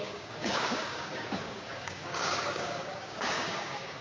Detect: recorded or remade remade